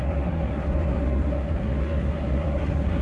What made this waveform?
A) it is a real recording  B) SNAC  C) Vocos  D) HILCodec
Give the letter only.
B